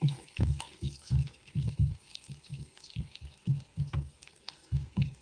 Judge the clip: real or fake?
fake